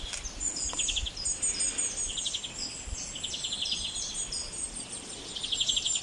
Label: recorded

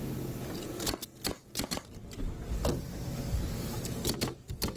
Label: recorded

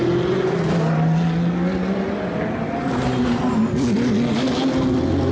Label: recorded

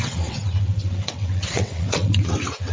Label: remade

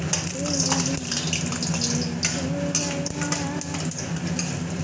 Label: recorded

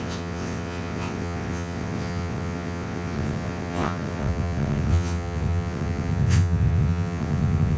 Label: remade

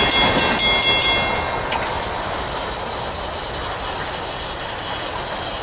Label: recorded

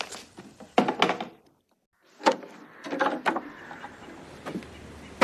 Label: recorded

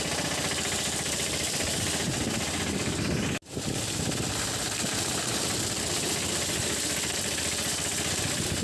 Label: recorded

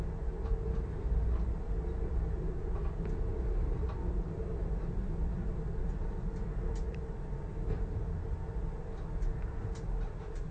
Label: recorded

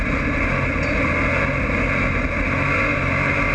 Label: recorded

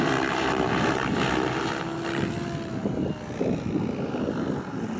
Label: recorded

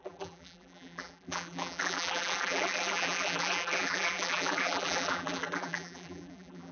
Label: remade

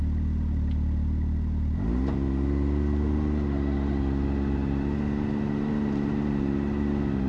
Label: recorded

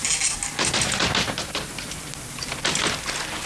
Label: recorded